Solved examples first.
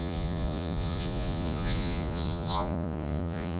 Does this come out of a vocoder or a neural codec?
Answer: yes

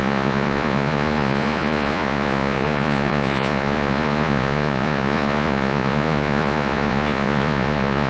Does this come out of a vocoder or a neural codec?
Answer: yes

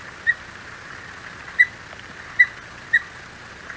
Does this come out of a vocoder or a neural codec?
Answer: no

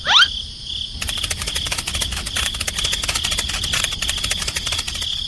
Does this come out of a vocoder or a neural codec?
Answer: no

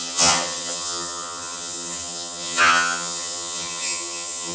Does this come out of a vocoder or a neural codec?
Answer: yes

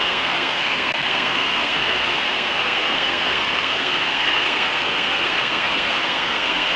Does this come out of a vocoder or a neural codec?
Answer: yes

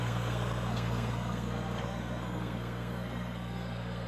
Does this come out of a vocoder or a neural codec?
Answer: yes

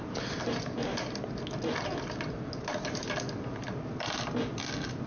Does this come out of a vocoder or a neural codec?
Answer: no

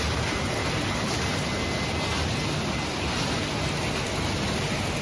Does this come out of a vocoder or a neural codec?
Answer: no